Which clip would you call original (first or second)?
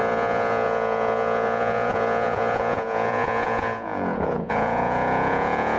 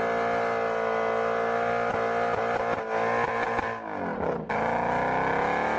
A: second